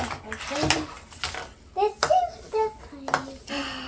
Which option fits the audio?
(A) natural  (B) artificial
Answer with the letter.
A